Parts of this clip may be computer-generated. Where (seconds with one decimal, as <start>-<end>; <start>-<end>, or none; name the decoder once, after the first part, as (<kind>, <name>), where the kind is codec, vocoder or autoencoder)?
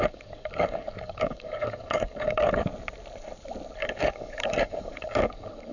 0.0-2.7 (codec, DAC); 3.8-5.7